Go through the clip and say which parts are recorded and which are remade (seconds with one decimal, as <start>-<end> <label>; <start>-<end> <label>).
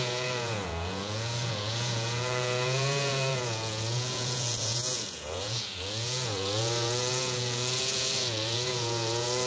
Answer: 0.0-9.5 remade